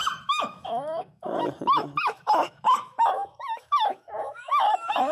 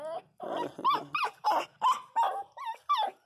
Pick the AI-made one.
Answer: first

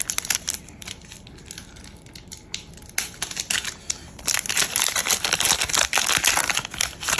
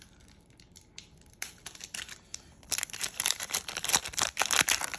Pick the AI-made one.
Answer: second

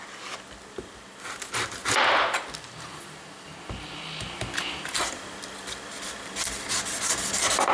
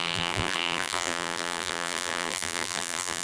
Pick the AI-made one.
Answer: second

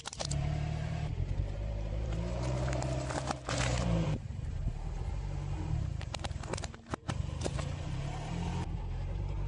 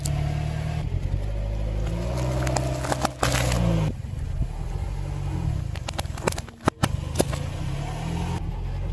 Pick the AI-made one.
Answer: first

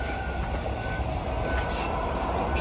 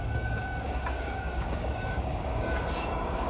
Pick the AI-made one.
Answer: second